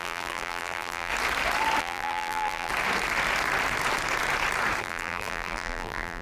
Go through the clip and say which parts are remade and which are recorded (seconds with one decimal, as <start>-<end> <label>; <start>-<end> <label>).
0.0-1.1 remade; 1.1-1.8 recorded; 1.8-2.7 remade; 2.7-4.8 recorded; 4.8-6.2 remade